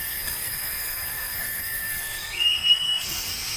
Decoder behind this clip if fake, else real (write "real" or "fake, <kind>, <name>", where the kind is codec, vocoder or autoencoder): fake, codec, SNAC